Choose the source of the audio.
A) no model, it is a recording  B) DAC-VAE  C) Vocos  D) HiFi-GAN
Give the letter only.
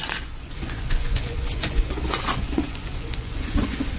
C